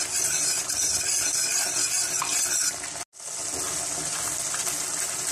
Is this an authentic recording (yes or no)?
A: yes